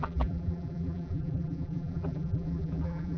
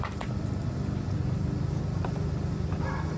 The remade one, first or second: first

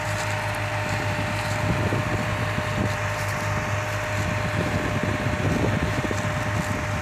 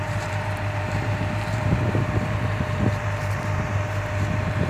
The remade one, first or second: second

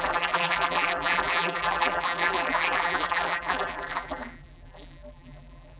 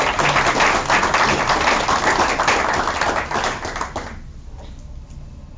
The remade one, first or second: first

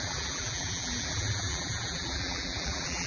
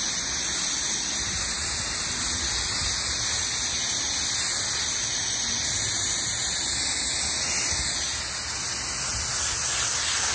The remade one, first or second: first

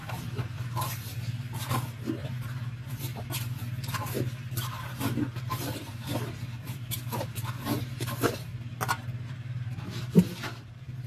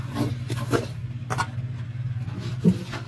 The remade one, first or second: first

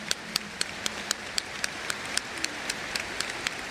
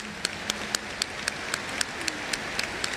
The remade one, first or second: first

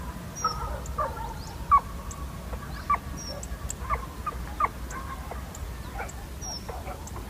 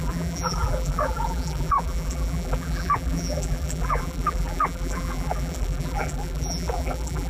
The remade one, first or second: second